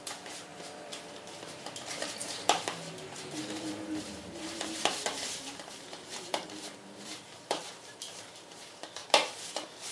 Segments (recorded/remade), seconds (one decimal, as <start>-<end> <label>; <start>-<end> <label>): 0.0-9.0 remade; 9.0-9.9 recorded